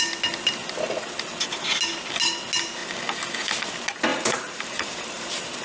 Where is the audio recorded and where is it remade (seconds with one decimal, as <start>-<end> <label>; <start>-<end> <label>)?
0.0-4.1 recorded; 4.1-5.6 remade